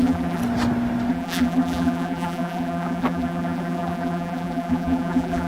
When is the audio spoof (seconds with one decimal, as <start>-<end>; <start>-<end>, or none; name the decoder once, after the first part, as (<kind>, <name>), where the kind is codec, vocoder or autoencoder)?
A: 0.0-0.4 (vocoder, BigVGAN v2); 1.1-5.5